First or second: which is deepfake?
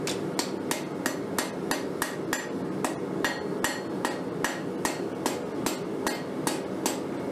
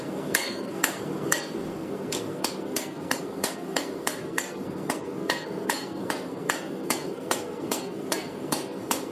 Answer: second